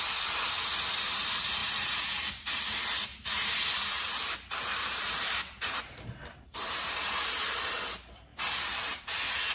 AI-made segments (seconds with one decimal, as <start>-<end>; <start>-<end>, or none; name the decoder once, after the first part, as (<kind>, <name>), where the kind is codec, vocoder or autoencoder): 1.6-2.6 (vocoder, BigVGAN v2); 3.1-7.7; 8.3-9.0